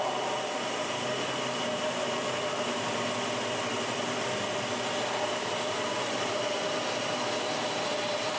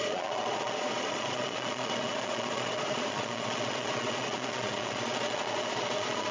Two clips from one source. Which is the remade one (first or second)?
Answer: second